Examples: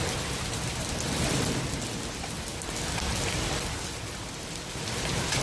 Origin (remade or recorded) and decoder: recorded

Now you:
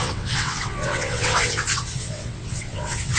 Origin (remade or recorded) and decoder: remade, vocoder, WaveNeXt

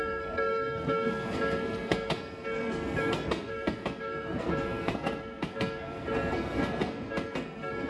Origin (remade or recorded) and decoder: remade, codec, SNAC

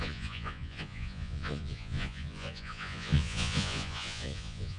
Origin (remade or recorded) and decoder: remade, vocoder, Vocos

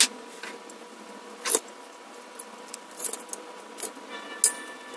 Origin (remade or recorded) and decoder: recorded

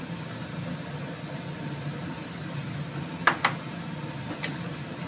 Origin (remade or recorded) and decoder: recorded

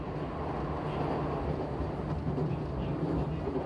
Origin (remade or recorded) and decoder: recorded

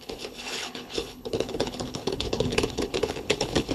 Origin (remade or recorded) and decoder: remade, codec, HILCodec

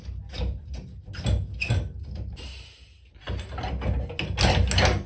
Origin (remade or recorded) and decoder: recorded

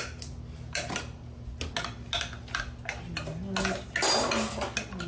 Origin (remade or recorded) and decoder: recorded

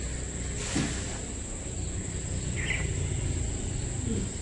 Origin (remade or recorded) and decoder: recorded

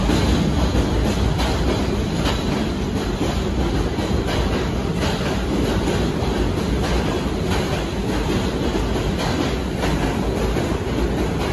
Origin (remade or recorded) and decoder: recorded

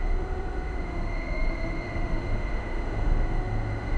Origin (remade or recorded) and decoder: remade, autoencoder, DAC-VAE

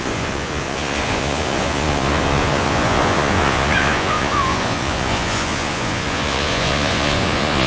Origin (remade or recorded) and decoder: remade, vocoder, Vocos